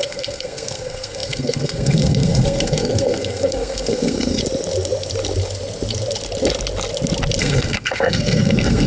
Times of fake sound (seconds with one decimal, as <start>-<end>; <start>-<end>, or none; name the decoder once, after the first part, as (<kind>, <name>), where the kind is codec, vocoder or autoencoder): 0.0-4.4 (codec, SNAC); 7.4-8.9